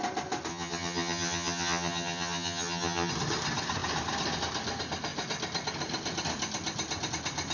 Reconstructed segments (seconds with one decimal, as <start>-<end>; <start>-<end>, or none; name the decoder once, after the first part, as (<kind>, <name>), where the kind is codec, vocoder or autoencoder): 0.5-3.1 (vocoder, HiFi-GAN)